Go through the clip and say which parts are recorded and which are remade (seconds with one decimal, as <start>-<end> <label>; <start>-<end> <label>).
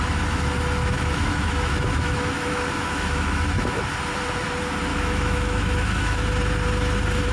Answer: 0.0-0.8 recorded; 0.8-3.8 remade; 3.8-4.9 recorded; 4.9-6.3 remade; 6.3-7.3 recorded